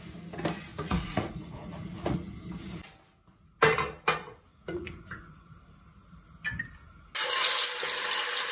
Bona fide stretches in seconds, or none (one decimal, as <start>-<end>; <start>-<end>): 0.0-0.7; 2.3-4.5; 5.6-8.5